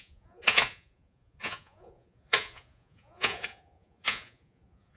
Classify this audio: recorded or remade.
remade